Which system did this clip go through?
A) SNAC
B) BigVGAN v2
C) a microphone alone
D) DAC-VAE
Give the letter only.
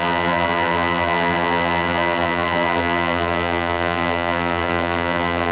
B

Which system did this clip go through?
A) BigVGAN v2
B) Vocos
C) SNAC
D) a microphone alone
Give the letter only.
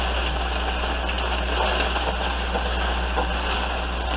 D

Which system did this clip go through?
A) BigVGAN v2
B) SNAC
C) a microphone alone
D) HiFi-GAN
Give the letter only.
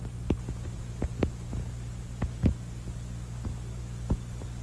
C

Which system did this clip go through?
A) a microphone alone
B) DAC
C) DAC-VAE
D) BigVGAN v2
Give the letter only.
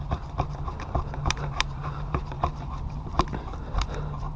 D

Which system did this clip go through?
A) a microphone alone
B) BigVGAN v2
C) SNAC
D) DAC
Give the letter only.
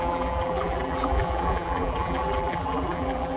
B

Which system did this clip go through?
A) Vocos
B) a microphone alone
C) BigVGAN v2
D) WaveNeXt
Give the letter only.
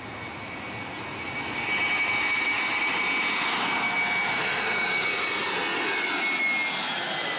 B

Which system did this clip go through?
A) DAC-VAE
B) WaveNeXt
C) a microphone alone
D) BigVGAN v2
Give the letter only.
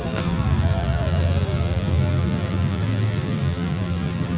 D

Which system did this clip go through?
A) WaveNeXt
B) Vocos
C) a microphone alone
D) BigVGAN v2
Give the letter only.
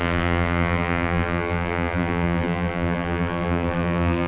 D